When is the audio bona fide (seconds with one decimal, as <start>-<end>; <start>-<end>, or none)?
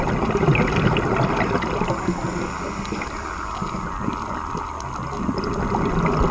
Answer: 0.0-6.3